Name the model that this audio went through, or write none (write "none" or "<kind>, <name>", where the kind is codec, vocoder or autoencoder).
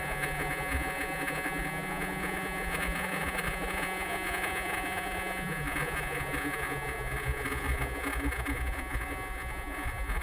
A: vocoder, Vocos